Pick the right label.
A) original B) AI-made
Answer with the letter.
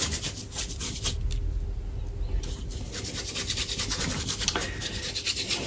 A